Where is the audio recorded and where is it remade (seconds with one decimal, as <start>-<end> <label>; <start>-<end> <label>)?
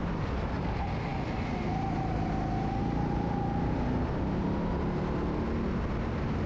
0.0-6.5 recorded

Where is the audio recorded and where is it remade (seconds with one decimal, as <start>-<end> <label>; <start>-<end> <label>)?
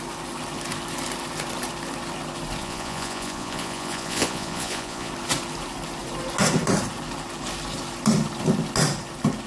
0.0-2.6 recorded; 2.6-5.1 remade; 5.1-9.5 recorded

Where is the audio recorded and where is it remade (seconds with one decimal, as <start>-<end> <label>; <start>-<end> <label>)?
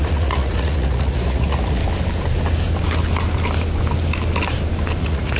0.0-1.8 remade; 1.8-5.0 recorded; 5.0-5.4 remade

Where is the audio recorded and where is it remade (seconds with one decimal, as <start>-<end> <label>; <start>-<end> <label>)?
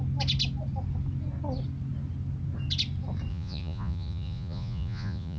0.0-3.3 recorded; 3.3-5.4 remade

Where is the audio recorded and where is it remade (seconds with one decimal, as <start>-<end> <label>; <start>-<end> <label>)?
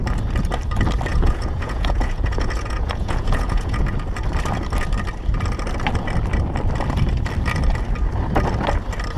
0.0-1.1 recorded; 1.1-3.8 remade; 3.8-9.2 recorded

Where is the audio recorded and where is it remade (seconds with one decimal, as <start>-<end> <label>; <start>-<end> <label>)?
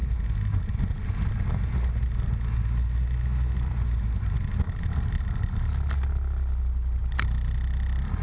0.0-8.2 recorded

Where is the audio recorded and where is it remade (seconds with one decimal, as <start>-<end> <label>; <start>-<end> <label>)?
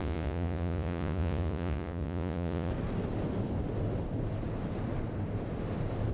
0.0-2.7 remade; 2.7-6.1 recorded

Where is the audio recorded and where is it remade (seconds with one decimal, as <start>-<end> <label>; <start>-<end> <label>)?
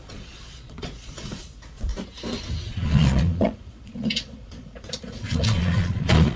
0.0-1.9 remade; 1.9-2.7 recorded; 2.7-6.4 remade